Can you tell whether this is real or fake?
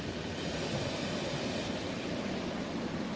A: real